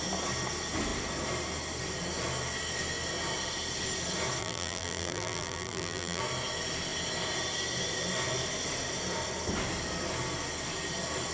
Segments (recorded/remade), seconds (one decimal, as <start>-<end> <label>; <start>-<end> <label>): 0.0-4.4 recorded; 4.4-6.2 remade; 6.2-11.3 recorded